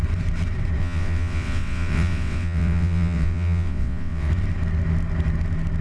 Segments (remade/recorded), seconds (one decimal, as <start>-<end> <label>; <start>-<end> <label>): 0.0-0.8 recorded; 0.8-4.3 remade; 4.3-5.8 recorded